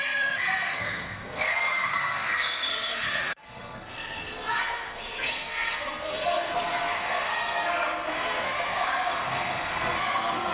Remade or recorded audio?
remade